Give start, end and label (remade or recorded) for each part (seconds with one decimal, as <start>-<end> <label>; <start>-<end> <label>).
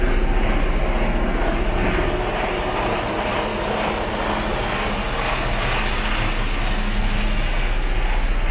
0.0-8.5 recorded